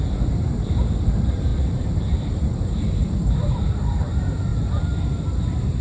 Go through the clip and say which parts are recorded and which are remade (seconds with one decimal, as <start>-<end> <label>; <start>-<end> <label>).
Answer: 0.0-5.8 remade